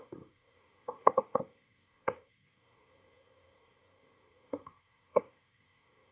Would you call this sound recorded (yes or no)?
no